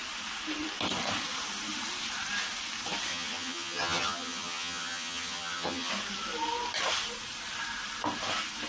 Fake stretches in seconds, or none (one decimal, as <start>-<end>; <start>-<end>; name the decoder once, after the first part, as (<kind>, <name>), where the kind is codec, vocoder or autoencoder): 3.1-5.9 (vocoder, HiFi-GAN)